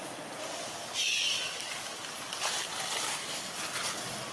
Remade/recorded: recorded